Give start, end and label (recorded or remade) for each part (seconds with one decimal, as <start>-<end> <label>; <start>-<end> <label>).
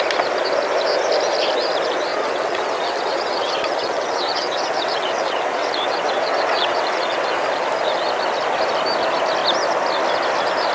0.0-2.1 recorded; 2.1-7.3 remade; 7.3-10.7 recorded